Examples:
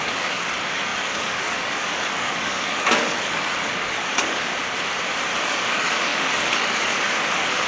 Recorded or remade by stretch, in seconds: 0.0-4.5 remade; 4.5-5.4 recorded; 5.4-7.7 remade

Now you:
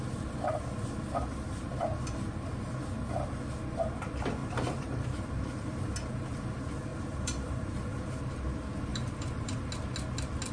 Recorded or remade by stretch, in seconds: 0.0-4.4 recorded; 4.4-5.8 remade; 5.8-6.9 recorded; 6.9-8.1 remade; 8.1-8.9 recorded; 8.9-9.6 remade; 9.6-10.5 recorded

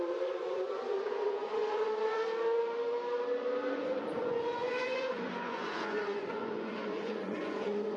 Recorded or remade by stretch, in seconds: 0.0-2.2 remade; 2.2-3.7 recorded; 3.7-8.0 remade

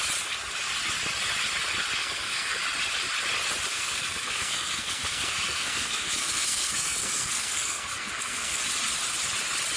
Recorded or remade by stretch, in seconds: 0.0-2.0 recorded; 2.0-2.6 remade; 2.6-3.7 recorded; 3.7-8.6 remade; 8.6-9.8 recorded

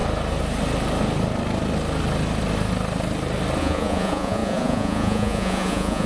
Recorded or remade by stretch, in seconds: 0.0-3.6 recorded; 3.6-6.1 remade